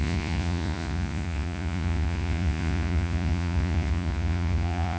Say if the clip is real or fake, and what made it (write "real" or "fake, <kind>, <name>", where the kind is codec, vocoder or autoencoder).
fake, vocoder, Vocos